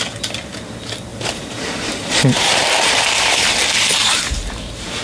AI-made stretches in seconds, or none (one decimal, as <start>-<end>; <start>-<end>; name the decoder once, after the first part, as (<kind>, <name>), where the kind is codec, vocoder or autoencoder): 1.1-3.5 (vocoder, BigVGAN v2); 4.0-5.0